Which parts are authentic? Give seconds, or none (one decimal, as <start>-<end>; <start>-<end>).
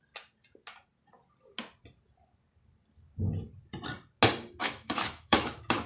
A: 0.0-4.6